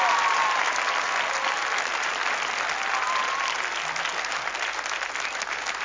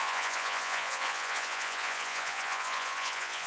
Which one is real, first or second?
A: first